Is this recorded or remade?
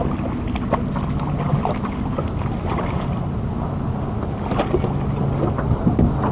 recorded